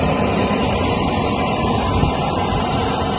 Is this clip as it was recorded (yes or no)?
no